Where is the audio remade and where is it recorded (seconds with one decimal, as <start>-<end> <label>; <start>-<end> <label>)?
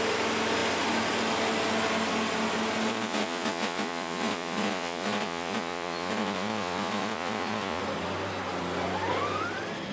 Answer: 0.0-2.9 recorded; 2.9-7.8 remade; 7.8-9.9 recorded